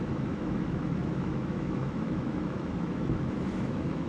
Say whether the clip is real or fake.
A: fake